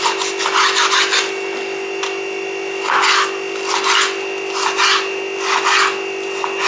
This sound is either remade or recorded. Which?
recorded